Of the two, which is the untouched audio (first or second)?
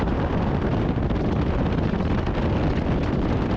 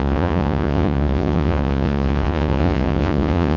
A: first